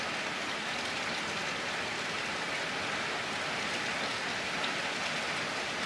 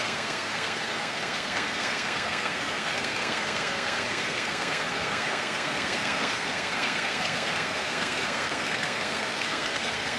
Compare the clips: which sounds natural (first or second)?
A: first